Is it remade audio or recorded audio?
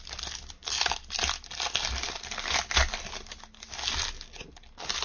recorded